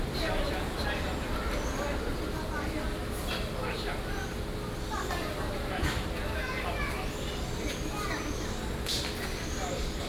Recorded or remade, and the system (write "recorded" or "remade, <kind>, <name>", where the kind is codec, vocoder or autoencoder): recorded